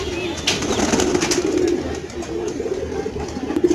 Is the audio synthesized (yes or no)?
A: no